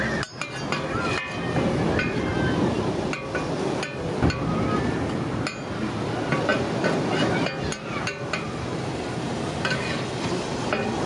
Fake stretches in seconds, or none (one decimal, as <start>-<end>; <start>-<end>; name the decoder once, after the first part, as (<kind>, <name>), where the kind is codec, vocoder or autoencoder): none